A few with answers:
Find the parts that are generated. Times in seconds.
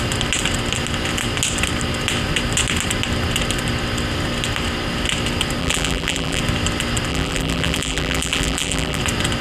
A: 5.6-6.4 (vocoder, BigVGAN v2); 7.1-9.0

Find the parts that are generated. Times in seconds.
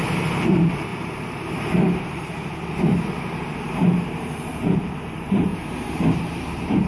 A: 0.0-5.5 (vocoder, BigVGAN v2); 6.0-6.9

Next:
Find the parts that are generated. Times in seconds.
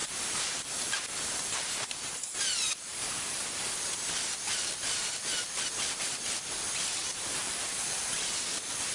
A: 0.0-0.7 (vocoder, BigVGAN v2); 2.9-3.4; 7.0-8.0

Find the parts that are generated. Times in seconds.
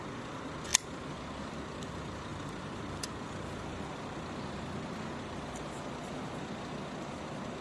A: 0.7-1.5 (vocoder, BigVGAN v2); 2.3-5.8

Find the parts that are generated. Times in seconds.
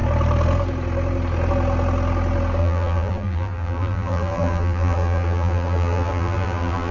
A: 2.6-6.9 (vocoder, BigVGAN v2)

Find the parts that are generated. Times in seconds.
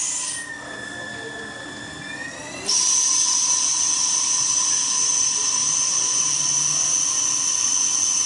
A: 2.3-3.7 (vocoder, BigVGAN v2); 5.6-6.4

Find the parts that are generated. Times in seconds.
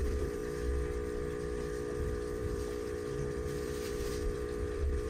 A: 0.0-0.4 (vocoder, BigVGAN v2); 2.0-5.1